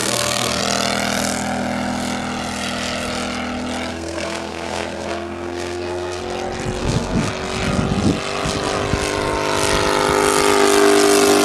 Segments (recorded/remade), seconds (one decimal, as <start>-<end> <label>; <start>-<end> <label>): 0.0-0.6 remade; 0.6-3.9 recorded; 3.9-6.2 remade; 6.2-6.8 recorded; 6.8-7.3 remade; 7.3-11.4 recorded